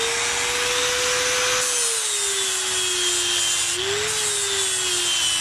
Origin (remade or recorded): recorded